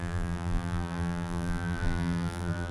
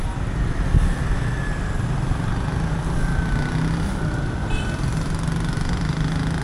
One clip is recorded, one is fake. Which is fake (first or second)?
first